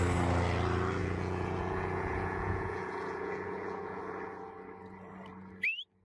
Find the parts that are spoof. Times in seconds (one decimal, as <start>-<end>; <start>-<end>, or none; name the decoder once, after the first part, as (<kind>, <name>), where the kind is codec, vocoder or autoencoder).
1.0-4.0 (vocoder, Vocos)